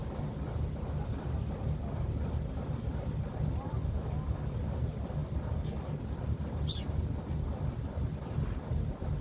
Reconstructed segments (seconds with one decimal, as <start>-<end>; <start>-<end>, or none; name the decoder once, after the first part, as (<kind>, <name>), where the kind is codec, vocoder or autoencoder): none